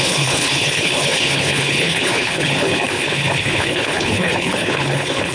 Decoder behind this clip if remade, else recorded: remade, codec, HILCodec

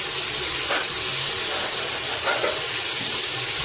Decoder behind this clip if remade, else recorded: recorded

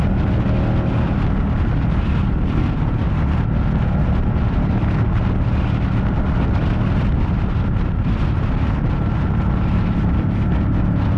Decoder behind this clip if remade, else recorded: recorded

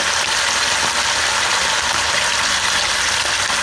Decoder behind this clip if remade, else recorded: recorded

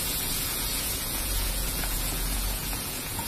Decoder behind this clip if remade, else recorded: remade, vocoder, Vocos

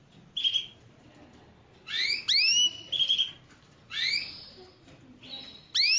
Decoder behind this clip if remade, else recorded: recorded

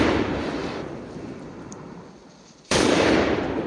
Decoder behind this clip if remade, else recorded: remade, vocoder, BigVGAN v2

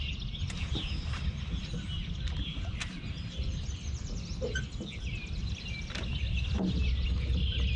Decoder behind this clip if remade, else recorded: recorded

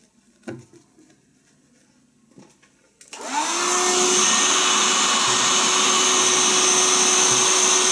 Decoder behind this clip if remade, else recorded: recorded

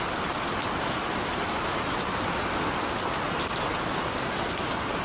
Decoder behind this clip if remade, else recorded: recorded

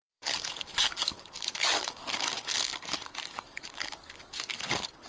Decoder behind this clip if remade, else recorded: remade, codec, DAC